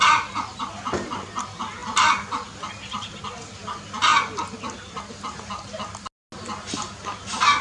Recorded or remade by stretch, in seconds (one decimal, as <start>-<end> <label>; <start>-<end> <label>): 0.0-7.6 recorded